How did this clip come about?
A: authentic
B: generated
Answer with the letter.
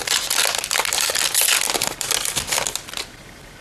A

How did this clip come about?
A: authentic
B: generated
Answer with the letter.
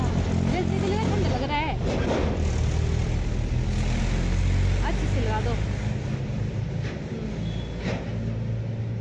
A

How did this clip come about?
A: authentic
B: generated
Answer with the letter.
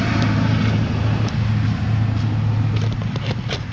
A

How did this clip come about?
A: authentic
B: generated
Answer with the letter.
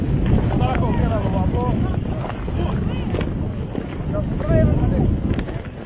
A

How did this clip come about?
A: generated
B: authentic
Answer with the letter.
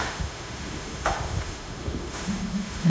A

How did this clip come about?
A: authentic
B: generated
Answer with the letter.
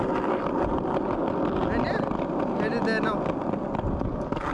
A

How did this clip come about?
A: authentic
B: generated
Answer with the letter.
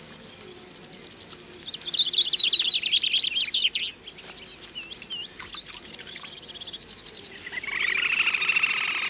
A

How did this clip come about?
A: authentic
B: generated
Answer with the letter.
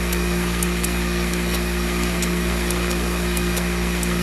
B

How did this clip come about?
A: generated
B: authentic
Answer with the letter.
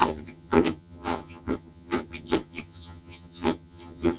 A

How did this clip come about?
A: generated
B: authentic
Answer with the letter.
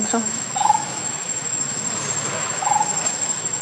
A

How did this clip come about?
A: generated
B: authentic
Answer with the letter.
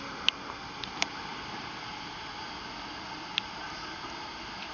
B